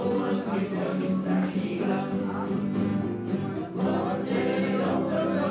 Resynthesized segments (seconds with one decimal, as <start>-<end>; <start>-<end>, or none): 0.9-2.2